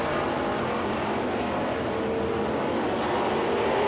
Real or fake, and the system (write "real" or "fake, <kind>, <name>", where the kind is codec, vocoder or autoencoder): real